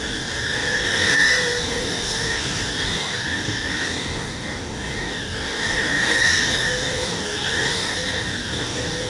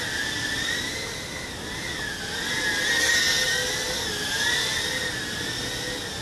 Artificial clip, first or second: first